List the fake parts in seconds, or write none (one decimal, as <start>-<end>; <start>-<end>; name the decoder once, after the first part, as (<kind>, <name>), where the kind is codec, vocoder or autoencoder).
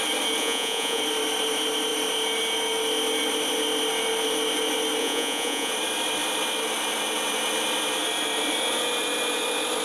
0.4-1.0 (vocoder, Vocos); 5.0-5.7